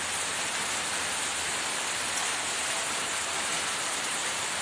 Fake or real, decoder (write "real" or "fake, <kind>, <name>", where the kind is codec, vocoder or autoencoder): fake, vocoder, BigVGAN v2